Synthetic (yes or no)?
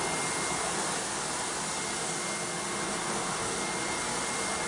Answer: no